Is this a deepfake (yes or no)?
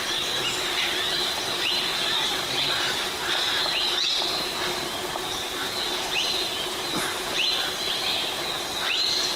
no